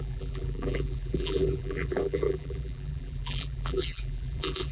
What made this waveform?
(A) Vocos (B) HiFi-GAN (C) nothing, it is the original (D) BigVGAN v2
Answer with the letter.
D